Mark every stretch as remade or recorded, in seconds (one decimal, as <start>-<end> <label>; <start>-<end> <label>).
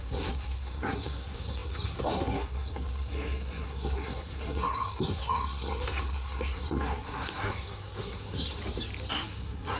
0.0-8.6 remade; 8.6-9.1 recorded; 9.1-9.8 remade